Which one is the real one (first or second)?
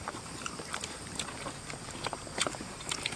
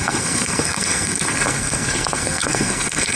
first